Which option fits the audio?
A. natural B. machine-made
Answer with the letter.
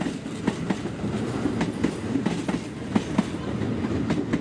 A